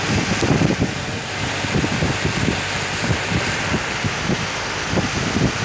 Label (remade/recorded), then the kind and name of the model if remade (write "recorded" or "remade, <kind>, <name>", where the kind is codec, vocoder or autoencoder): recorded